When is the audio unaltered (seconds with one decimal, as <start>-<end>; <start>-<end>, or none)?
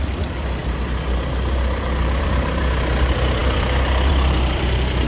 0.6-2.2